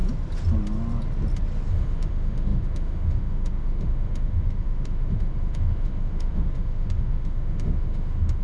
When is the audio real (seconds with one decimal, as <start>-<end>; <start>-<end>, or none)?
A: 0.0-1.7